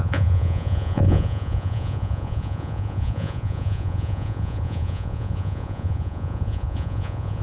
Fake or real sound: fake